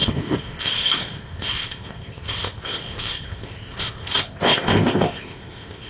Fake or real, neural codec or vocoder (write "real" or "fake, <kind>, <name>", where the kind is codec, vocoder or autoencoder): fake, codec, ZipCodec